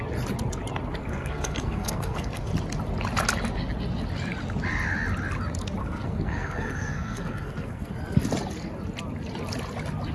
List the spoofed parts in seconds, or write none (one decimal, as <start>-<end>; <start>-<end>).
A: 1.0-2.5; 5.8-7.9